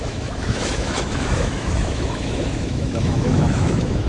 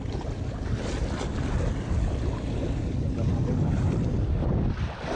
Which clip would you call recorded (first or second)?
second